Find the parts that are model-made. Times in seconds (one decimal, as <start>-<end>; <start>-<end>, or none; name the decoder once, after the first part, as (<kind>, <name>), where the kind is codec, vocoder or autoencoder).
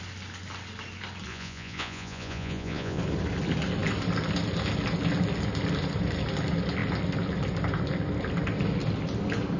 1.3-3.0 (vocoder, Vocos)